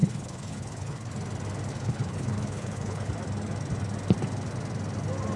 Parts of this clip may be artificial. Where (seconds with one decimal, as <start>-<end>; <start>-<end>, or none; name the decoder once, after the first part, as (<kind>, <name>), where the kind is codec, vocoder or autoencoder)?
0.0-1.1 (codec, HILCodec); 1.7-3.1